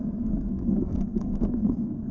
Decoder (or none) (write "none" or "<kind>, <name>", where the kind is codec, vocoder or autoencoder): codec, SNAC